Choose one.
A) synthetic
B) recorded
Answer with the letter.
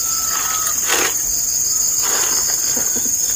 B